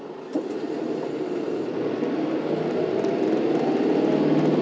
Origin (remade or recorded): recorded